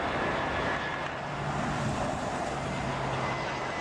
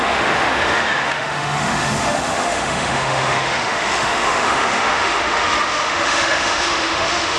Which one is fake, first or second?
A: second